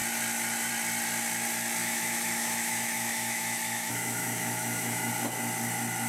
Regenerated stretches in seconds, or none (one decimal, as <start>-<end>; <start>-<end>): 1.8-5.1